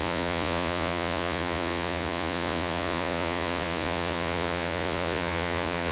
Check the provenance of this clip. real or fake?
fake